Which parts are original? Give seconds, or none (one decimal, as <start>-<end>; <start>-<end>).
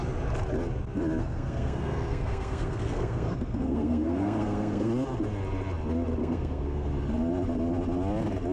0.0-1.2; 4.9-6.2; 6.9-8.5